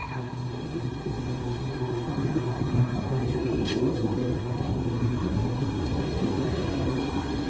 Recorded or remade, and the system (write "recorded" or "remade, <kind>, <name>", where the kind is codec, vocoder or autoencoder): remade, codec, SNAC